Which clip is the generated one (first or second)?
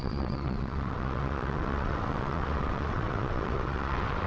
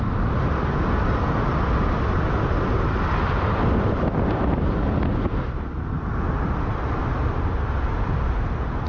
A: first